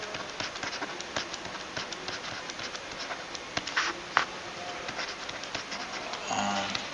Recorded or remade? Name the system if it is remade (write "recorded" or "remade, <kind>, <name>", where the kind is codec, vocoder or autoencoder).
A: recorded